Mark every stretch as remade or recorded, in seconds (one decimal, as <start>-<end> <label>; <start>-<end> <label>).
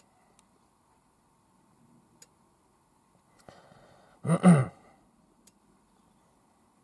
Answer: 0.0-4.6 recorded; 4.6-5.6 remade; 5.6-6.8 recorded